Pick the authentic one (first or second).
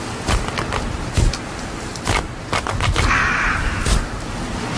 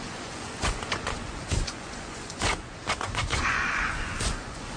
first